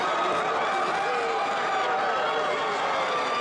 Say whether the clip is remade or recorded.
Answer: recorded